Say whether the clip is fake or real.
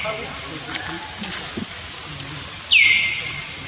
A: real